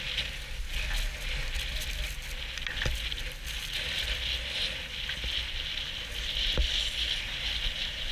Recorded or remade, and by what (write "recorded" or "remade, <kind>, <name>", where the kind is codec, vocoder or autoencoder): recorded